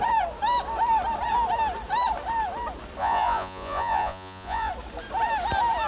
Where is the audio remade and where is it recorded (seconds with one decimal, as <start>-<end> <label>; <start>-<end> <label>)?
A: 0.0-3.0 recorded; 3.0-4.7 remade; 4.7-5.9 recorded